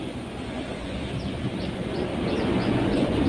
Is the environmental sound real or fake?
fake